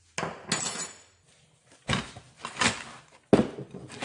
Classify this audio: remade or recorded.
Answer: recorded